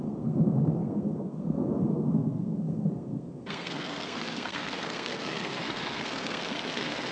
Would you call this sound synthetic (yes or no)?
yes